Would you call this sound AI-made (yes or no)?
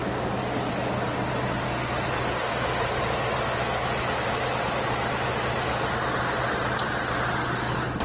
no